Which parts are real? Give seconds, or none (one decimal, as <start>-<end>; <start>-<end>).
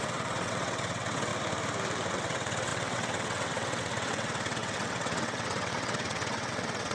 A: 1.3-2.1